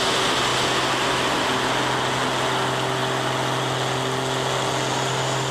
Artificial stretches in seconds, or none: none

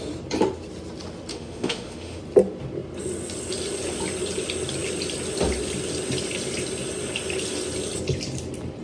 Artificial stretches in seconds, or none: 1.3-2.2